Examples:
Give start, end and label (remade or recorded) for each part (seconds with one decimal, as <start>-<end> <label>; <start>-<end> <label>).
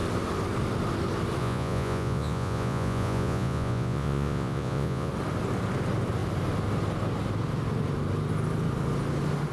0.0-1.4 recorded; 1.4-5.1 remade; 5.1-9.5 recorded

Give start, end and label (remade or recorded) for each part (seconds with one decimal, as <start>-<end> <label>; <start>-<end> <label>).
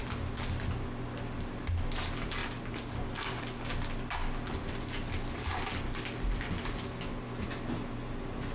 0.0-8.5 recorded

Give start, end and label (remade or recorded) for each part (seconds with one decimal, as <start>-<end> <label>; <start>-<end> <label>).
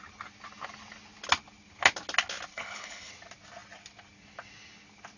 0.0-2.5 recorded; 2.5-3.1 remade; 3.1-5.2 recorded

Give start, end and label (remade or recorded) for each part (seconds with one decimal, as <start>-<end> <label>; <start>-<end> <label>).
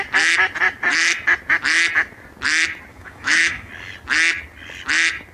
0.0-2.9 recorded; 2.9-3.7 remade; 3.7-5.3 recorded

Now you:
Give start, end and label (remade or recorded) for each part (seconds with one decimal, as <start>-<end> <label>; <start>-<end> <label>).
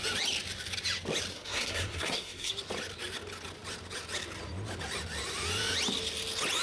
0.0-1.3 recorded; 1.3-2.5 remade; 2.5-6.6 recorded